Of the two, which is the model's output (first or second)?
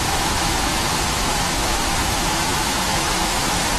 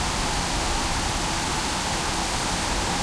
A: first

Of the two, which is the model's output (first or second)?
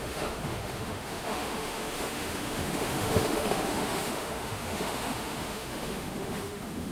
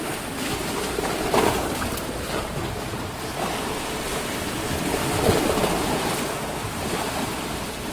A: first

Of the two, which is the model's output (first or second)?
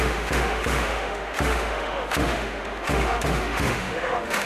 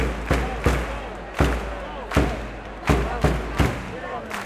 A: first